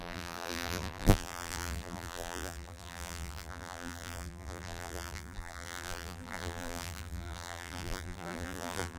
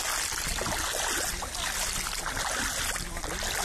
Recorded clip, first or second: second